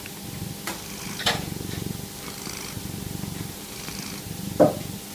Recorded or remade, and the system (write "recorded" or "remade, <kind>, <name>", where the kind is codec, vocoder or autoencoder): recorded